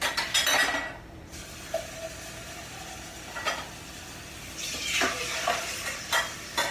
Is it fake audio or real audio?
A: real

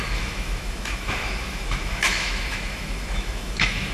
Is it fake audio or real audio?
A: fake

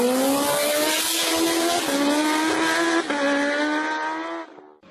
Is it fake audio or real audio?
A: real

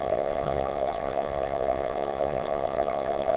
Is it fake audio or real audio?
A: fake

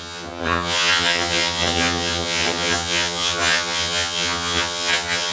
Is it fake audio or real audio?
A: fake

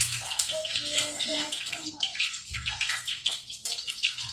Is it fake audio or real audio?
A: fake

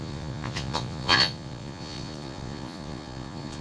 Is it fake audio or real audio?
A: fake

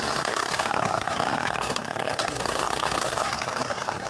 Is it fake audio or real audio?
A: fake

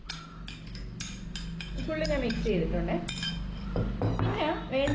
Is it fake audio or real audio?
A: real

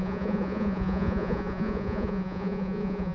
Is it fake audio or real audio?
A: fake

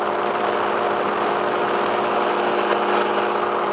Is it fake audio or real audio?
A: real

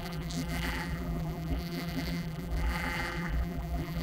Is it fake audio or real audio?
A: fake